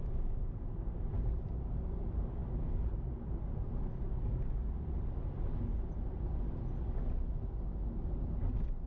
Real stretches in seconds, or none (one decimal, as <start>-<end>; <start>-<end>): 0.0-8.9